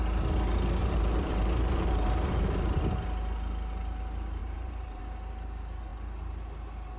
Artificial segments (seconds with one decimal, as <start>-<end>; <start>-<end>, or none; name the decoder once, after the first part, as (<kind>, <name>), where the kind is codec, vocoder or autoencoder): 0.8-2.9 (vocoder, BigVGAN v2); 4.4-5.0